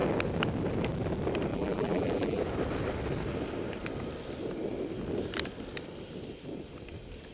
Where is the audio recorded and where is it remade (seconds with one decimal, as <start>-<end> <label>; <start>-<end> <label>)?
0.0-1.5 recorded; 1.5-2.4 remade; 2.4-7.3 recorded